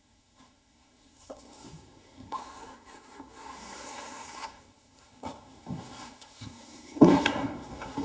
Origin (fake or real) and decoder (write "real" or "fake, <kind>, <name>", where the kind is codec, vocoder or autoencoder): fake, codec, SNAC